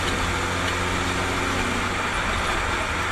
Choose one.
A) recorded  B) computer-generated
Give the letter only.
A